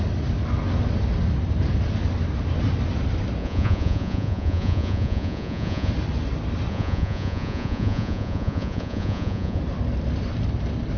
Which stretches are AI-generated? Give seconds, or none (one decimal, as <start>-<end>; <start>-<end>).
3.4-5.9; 6.7-9.6

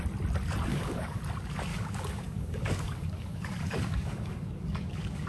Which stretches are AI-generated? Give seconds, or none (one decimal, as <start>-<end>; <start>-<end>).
0.7-1.2; 1.7-5.3

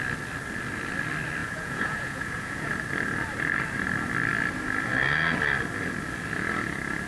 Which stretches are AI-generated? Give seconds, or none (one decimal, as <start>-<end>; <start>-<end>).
1.4-2.7

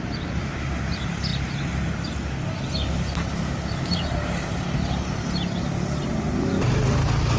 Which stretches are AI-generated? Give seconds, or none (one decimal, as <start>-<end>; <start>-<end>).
none

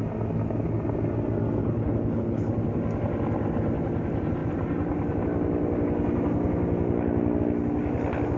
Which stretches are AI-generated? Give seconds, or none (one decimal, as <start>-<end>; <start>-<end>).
1.6-2.5

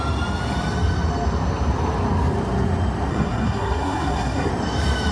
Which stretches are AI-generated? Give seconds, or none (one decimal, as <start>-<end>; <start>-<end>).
3.1-4.5

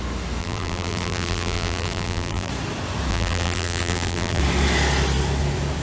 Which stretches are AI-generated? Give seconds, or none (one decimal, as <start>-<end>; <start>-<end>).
0.4-2.5; 3.1-4.4